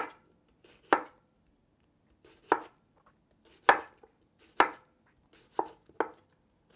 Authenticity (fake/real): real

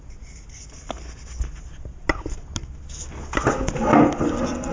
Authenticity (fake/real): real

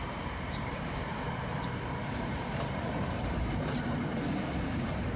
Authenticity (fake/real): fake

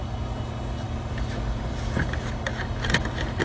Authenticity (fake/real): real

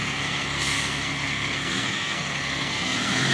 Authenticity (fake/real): fake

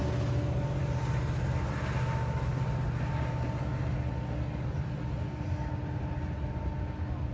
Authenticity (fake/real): real